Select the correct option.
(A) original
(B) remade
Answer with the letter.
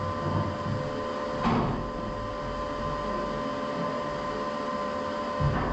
A